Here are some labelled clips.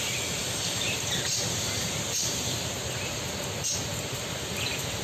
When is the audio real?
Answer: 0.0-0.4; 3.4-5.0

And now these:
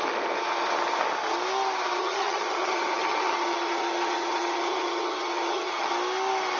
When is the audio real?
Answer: 0.0-2.0; 5.9-6.6

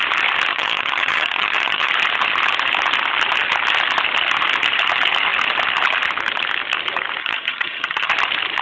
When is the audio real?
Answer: 0.0-0.5; 1.9-7.2; 8.1-8.6

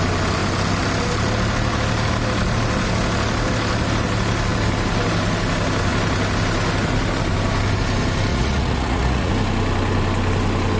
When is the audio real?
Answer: 0.0-8.3; 9.3-10.8

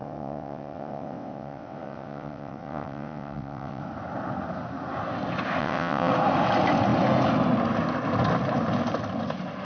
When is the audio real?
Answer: 3.8-5.6; 6.1-9.6

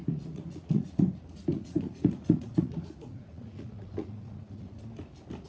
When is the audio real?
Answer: 1.0-1.5; 4.8-5.5

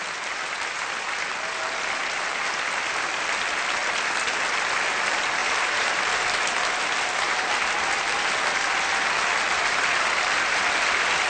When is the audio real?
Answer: 0.0-5.4; 6.0-11.3

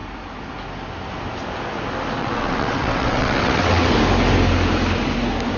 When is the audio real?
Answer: 0.0-2.2; 3.9-5.6